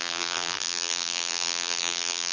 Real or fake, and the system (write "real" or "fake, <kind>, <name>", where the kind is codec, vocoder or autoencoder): fake, vocoder, BigVGAN v2